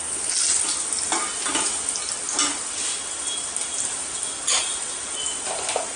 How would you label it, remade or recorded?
recorded